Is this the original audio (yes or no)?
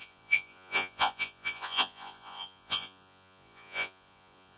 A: no